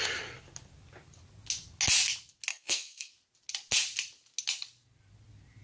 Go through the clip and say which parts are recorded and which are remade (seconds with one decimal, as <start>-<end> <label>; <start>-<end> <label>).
0.0-2.5 recorded; 2.5-3.1 remade; 3.1-5.6 recorded